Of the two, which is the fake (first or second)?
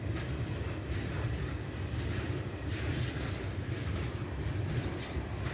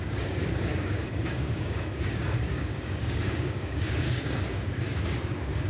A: second